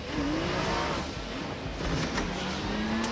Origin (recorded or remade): recorded